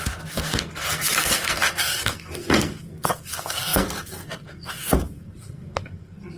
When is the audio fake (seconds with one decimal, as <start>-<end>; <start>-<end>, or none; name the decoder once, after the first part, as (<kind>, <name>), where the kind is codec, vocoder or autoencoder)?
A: 0.0-6.4 (codec, SNAC)